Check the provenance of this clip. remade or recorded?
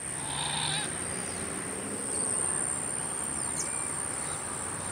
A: recorded